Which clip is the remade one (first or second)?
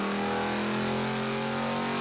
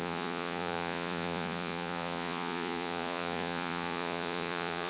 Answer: second